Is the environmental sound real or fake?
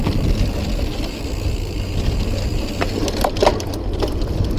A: real